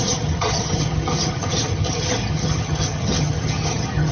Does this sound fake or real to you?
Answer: fake